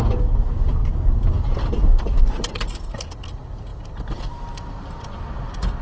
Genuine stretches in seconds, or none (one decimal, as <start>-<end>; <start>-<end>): 0.0-0.8; 3.2-3.7; 5.2-5.8